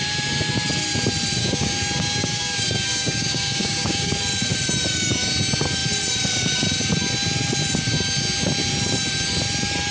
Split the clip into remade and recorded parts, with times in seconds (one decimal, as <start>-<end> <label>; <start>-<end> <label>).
0.0-1.4 recorded; 1.4-4.1 remade; 4.1-9.9 recorded